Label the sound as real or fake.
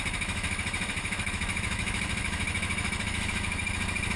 fake